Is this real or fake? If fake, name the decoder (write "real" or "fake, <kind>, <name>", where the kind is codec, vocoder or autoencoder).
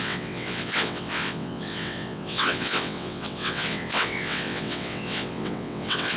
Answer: fake, vocoder, WaveNeXt